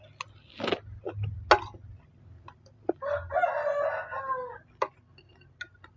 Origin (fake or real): real